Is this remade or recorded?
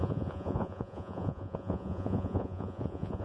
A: remade